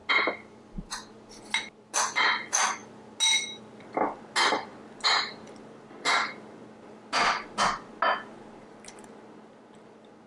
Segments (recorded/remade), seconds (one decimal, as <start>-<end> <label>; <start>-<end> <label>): 0.0-10.3 recorded